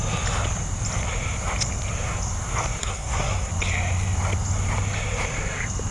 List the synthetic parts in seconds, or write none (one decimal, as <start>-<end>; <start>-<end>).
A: 2.8-3.5